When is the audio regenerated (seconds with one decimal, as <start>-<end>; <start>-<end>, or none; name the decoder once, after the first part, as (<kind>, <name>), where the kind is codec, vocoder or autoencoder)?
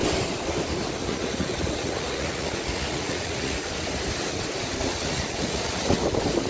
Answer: 1.0-3.7 (vocoder, Vocos); 4.8-6.0